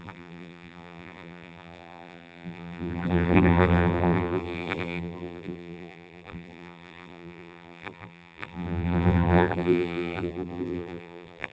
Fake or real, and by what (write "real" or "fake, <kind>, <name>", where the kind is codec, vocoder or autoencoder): fake, vocoder, BigVGAN v2